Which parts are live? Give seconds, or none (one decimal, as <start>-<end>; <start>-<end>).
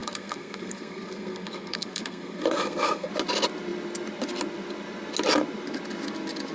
3.1-6.5